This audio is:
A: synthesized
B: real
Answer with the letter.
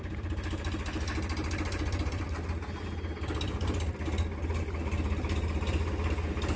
B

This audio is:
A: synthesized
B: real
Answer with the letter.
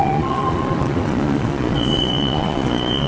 A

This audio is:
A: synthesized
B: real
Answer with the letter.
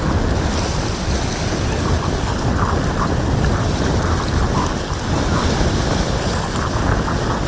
B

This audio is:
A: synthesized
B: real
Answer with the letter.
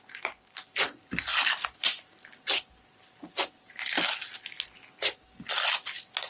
B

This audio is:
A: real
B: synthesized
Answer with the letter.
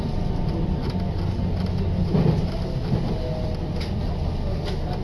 A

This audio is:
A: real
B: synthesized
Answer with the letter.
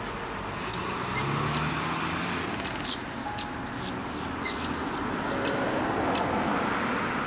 A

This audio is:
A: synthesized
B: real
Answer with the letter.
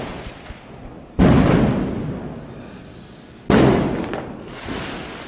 B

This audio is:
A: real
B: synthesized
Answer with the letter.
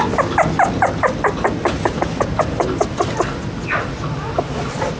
A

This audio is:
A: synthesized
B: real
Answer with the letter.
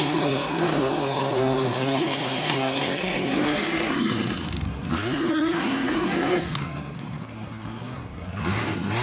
A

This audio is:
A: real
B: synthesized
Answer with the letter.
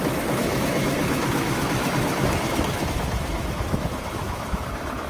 B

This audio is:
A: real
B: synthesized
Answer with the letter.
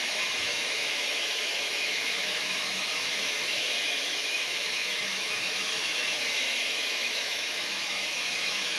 B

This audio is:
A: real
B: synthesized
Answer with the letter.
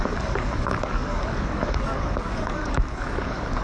B